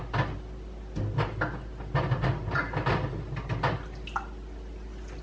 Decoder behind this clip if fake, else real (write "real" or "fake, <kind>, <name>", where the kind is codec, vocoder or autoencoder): real